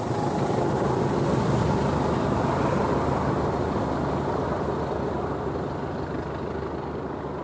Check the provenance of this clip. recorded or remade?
recorded